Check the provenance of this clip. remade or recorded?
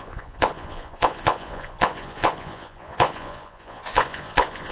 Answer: remade